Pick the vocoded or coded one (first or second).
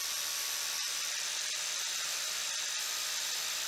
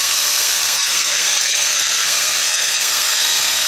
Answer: second